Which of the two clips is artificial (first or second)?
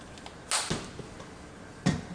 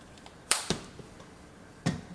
second